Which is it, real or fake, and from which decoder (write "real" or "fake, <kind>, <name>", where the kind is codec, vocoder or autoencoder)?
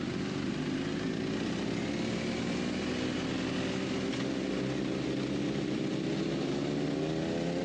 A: real